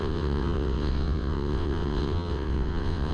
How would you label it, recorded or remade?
remade